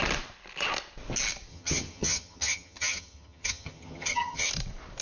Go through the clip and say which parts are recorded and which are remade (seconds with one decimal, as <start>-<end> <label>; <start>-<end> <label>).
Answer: 0.0-1.5 recorded; 1.5-4.5 remade; 4.5-5.0 recorded